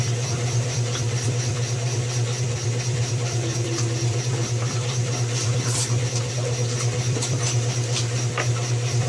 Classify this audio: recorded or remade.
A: remade